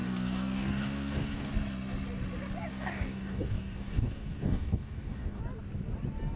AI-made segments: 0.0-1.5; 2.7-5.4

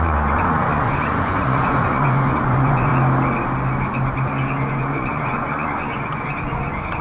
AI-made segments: 0.0-2.9; 4.7-7.0

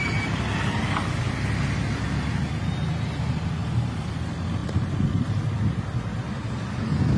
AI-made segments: none

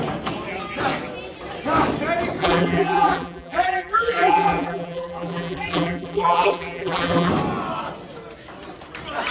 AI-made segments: 2.4-7.3

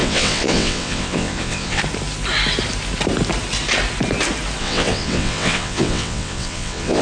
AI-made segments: 0.0-1.8; 4.6-7.0